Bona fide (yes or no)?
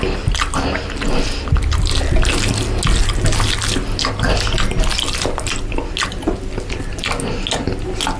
yes